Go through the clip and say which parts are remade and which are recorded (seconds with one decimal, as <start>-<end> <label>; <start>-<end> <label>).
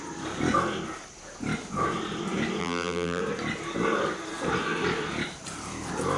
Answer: 0.0-2.6 recorded; 2.6-3.2 remade; 3.2-6.2 recorded